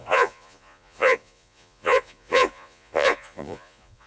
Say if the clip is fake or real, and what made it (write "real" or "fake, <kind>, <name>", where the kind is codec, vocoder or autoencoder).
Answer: fake, vocoder, Vocos